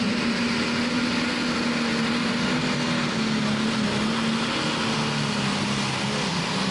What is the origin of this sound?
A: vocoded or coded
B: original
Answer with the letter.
B